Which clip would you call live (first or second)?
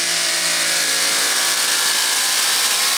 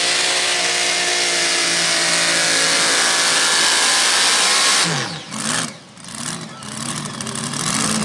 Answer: second